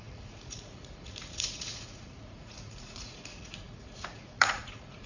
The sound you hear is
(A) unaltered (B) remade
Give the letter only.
B